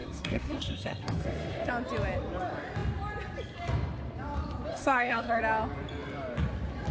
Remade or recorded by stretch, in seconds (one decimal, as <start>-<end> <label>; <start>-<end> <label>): 0.0-1.7 remade; 1.7-4.7 recorded; 4.7-5.4 remade; 5.4-6.9 recorded